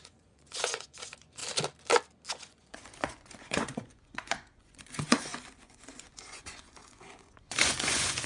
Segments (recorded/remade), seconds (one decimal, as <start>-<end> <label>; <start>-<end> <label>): 0.0-1.4 remade; 1.4-2.3 recorded; 2.3-8.3 remade

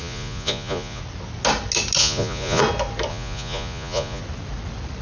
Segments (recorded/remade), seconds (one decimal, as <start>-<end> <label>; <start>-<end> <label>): 0.0-1.0 remade; 1.0-2.0 recorded; 2.0-2.6 remade; 2.6-3.1 recorded; 3.1-4.2 remade; 4.2-5.0 recorded